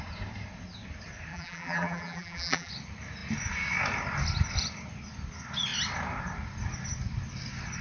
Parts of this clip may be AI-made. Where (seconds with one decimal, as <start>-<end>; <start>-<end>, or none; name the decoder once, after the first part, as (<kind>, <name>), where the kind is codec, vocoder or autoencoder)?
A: 1.3-2.7 (vocoder, BigVGAN v2)